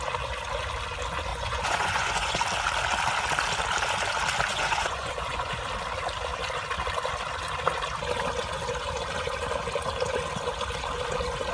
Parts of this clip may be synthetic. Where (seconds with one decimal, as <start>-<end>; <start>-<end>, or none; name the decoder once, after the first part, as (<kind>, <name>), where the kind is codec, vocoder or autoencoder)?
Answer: 1.3-2.4 (vocoder, Vocos); 4.5-5.6